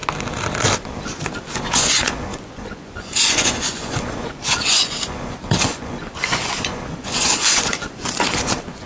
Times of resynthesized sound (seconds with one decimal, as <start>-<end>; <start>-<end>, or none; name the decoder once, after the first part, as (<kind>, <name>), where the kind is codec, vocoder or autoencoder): 1.4-8.9 (vocoder, Vocos)